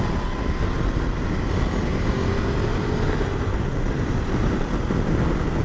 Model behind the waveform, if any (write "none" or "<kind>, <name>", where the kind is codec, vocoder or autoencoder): none